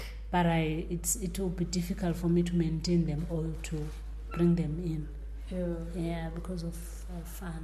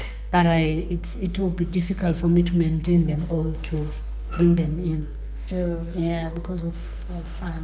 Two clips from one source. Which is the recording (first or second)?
first